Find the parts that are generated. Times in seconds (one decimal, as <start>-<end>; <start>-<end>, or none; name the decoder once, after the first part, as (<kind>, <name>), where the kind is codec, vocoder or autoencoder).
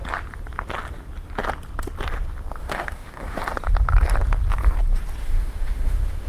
2.6-3.4 (autoencoder, DAC-VAE); 5.2-6.3